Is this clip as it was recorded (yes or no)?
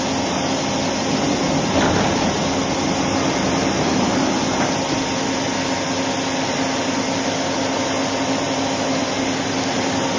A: yes